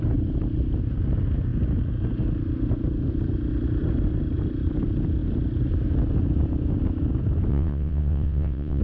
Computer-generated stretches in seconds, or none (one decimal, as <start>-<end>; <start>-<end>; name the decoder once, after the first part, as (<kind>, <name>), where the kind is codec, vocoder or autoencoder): 7.5-8.8 (vocoder, WaveNeXt)